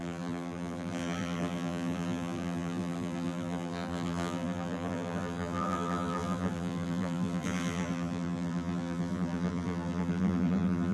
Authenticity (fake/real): fake